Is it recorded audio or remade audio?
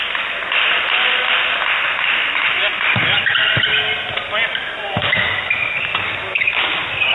recorded